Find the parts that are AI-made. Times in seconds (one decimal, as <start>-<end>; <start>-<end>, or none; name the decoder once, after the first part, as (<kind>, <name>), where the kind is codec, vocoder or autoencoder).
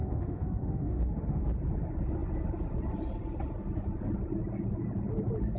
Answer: 0.0-1.4 (autoencoder, DAC-VAE)